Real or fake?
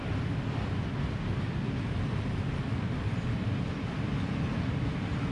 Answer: real